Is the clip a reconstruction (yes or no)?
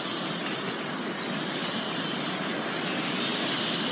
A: no